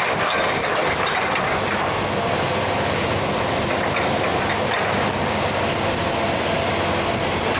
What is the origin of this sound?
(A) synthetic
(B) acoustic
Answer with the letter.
B